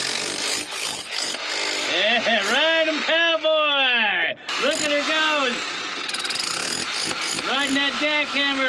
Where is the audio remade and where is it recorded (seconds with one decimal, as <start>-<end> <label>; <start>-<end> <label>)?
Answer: 0.0-0.5 recorded; 0.5-1.2 remade; 1.2-8.7 recorded